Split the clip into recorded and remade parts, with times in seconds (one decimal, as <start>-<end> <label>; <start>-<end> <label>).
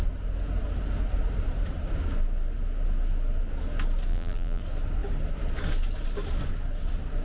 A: 0.0-4.1 recorded; 4.1-4.6 remade; 4.6-7.2 recorded